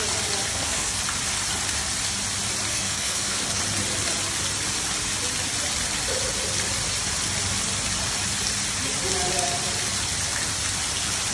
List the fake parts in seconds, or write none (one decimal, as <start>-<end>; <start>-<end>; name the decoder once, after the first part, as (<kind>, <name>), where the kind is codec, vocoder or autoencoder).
0.5-1.0 (codec, SNAC); 2.7-3.6